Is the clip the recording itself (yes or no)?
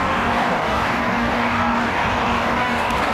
no